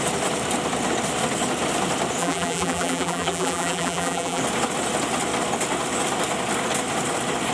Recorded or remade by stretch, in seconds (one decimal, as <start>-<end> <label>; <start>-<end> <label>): 0.0-2.2 recorded; 2.2-4.4 remade; 4.4-7.5 recorded